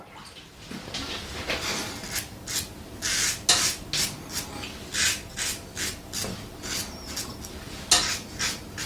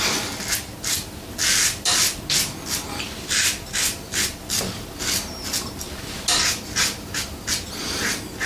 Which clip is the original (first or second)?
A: first